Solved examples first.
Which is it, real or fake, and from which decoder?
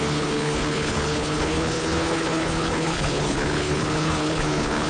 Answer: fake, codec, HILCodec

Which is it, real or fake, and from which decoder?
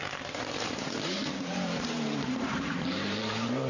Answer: fake, vocoder, BigVGAN v2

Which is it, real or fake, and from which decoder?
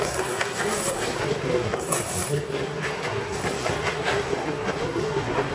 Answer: fake, codec, SNAC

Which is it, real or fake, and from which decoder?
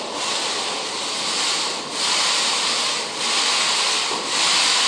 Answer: real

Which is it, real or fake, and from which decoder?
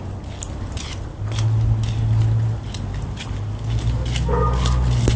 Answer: real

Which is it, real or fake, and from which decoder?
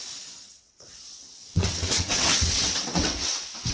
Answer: fake, vocoder, WaveNeXt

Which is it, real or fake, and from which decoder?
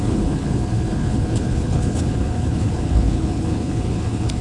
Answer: fake, codec, HILCodec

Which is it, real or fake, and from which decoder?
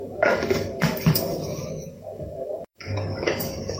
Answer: fake, codec, DAC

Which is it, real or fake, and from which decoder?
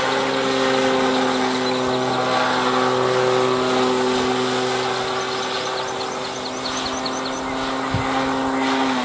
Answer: real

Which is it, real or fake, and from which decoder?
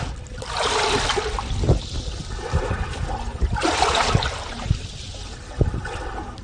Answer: real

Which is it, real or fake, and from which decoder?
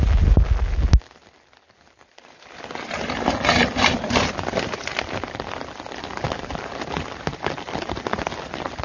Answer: real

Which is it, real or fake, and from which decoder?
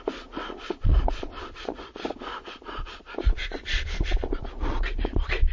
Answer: fake, vocoder, Vocos